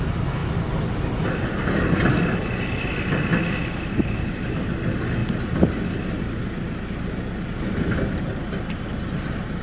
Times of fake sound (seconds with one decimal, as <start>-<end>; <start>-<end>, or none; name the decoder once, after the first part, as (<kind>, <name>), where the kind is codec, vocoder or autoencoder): none